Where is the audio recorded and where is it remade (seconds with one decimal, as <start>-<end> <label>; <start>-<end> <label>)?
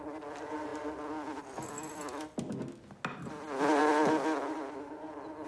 0.0-5.5 recorded